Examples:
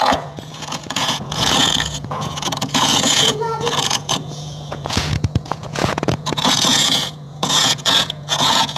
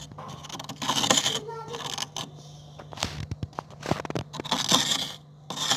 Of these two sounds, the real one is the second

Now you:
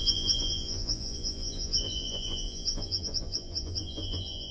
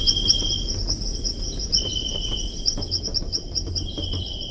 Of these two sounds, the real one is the second